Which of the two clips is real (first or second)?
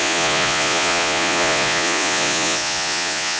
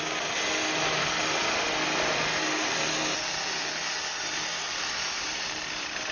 second